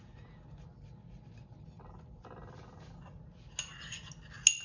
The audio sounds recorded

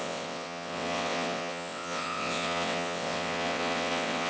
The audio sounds remade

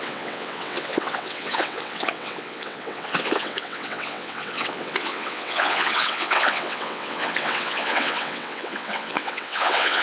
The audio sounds remade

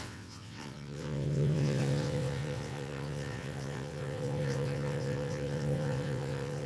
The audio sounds remade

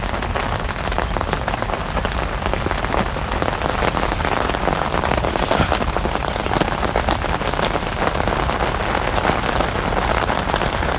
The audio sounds recorded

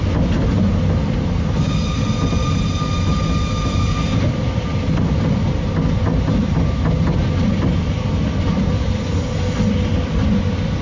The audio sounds recorded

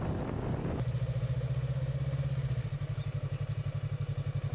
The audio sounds recorded